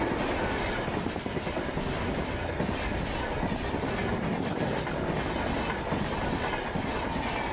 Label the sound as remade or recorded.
recorded